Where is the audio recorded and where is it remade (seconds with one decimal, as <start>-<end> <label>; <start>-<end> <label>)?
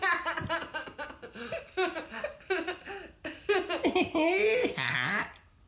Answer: 0.0-4.6 recorded; 4.6-5.2 remade; 5.2-5.7 recorded